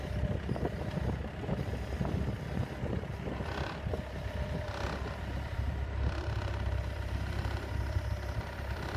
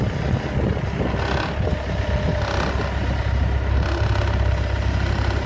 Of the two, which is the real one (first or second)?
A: second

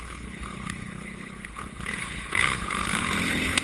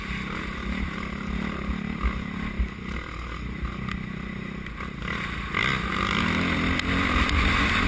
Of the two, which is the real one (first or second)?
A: second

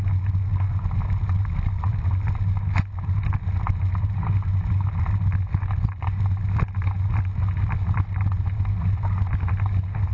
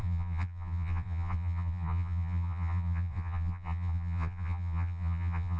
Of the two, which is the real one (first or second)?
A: first